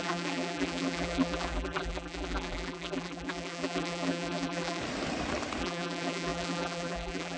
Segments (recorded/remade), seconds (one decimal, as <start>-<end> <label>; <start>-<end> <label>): 0.0-4.8 remade; 4.8-5.6 recorded; 5.6-7.4 remade